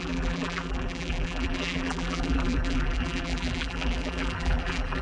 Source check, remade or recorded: remade